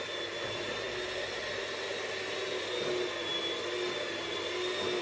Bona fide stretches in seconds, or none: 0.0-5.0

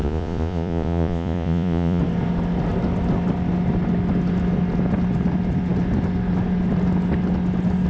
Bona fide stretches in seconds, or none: 2.0-7.9

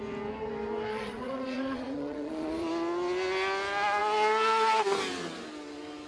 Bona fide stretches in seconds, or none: 0.0-0.9; 2.7-6.1

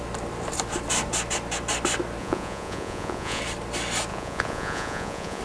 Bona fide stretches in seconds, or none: 0.0-2.2; 3.4-4.1